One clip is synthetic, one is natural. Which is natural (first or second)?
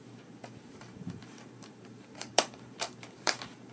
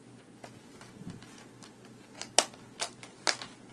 second